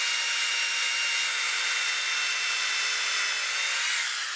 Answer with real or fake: real